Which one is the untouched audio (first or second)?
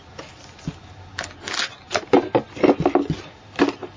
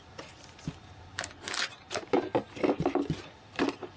first